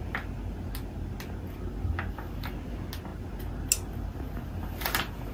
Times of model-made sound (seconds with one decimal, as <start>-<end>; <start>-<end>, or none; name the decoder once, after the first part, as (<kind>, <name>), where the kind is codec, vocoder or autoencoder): none